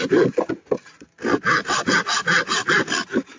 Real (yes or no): yes